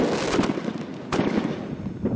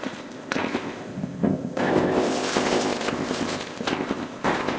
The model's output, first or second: second